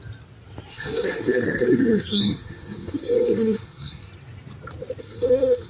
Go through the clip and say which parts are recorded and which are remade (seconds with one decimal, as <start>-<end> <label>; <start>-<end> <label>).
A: 0.0-0.7 recorded; 0.7-4.1 remade; 4.1-5.0 recorded; 5.0-5.7 remade